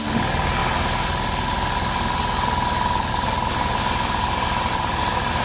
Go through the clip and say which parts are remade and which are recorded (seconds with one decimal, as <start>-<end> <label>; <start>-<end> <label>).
0.0-5.4 recorded